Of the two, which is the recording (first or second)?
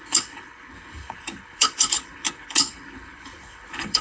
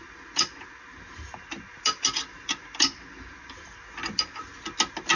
second